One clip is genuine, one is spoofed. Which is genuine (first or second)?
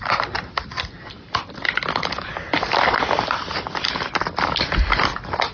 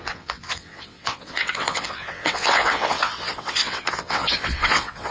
first